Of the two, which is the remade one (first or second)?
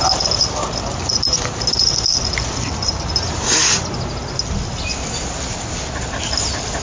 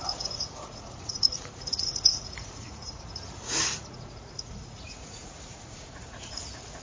second